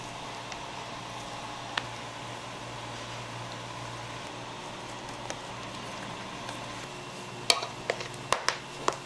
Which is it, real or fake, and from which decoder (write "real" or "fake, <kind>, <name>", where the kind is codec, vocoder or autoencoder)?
real